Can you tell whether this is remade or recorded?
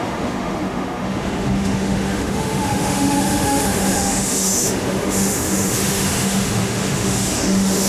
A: remade